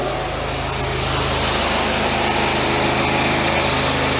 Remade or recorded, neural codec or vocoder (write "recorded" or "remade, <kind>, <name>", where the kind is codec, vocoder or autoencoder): recorded